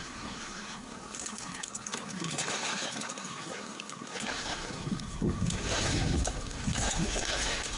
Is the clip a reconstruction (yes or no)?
yes